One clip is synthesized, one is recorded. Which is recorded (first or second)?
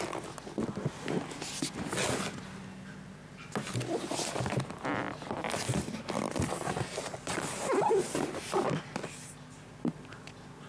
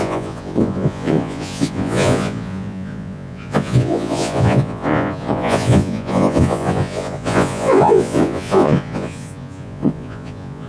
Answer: first